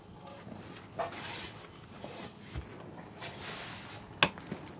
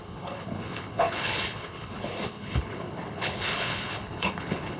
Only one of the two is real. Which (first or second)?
first